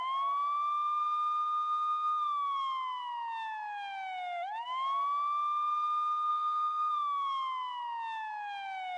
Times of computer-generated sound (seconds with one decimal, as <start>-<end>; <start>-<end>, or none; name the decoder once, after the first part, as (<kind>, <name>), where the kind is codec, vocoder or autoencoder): 6.3-6.9 (codec, SNAC)